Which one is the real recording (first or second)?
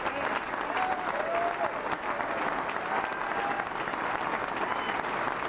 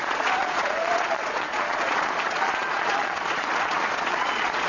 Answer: first